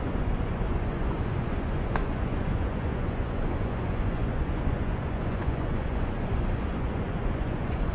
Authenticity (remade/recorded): remade